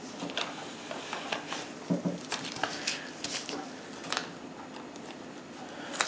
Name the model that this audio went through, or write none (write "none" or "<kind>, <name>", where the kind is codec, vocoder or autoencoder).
none